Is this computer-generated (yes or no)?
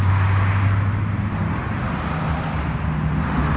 no